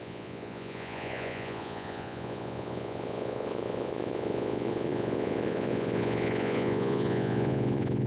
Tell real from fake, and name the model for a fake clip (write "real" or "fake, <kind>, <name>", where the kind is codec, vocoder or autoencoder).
fake, vocoder, Vocos